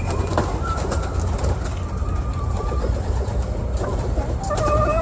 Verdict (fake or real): real